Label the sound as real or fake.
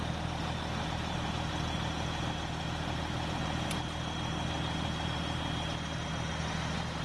real